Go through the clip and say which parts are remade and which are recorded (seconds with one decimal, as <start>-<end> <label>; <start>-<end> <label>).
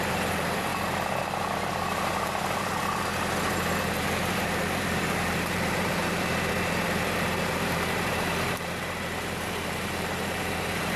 0.0-0.7 remade; 0.7-1.4 recorded; 1.4-3.1 remade; 3.1-3.8 recorded; 3.8-11.0 remade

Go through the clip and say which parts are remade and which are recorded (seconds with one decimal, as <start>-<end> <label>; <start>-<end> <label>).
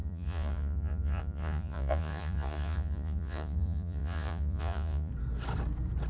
0.0-5.1 remade; 5.1-6.1 recorded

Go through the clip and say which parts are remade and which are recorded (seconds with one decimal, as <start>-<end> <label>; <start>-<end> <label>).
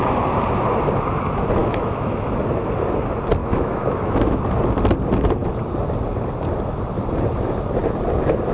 0.0-1.6 recorded; 1.6-2.4 remade; 2.4-3.4 recorded; 3.4-4.4 remade; 4.4-8.5 recorded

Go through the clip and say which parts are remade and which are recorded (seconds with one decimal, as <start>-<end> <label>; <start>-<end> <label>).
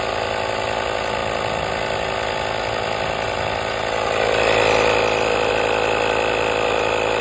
0.0-7.2 recorded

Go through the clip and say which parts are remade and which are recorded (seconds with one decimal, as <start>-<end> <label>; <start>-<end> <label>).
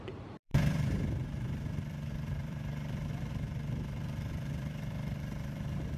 0.0-6.0 remade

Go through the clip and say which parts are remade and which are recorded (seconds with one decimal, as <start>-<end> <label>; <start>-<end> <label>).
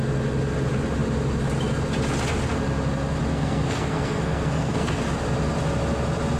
0.0-3.3 recorded; 3.3-5.1 remade; 5.1-6.4 recorded